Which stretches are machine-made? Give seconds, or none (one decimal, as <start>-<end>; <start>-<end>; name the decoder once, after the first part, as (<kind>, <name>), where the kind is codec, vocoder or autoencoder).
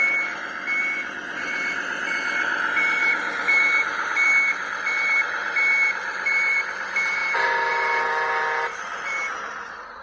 0.0-10.0 (vocoder, BigVGAN v2)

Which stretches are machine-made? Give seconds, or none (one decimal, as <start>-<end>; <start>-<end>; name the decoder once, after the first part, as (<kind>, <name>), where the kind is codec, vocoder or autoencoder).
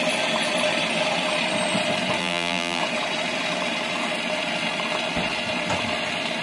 2.2-2.8 (vocoder, BigVGAN v2)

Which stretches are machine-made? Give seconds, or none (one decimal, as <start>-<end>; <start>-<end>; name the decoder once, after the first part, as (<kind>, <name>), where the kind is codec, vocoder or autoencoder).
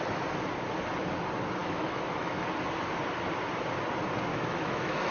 1.6-2.4 (autoencoder, DAC-VAE); 4.3-5.1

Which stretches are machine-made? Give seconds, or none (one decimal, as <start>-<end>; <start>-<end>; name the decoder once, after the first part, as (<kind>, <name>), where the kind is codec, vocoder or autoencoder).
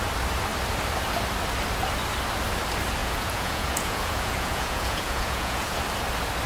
3.0-5.8 (vocoder, Vocos)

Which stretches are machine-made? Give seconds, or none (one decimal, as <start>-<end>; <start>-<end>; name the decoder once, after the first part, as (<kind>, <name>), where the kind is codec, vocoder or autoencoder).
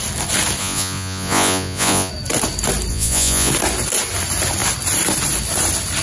0.6-2.1 (vocoder, Vocos); 2.9-3.5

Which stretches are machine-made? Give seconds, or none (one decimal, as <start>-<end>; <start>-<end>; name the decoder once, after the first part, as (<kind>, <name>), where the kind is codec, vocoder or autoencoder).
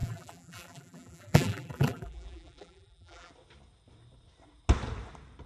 0.0-3.3 (vocoder, BigVGAN v2)